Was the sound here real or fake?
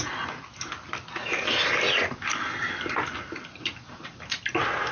real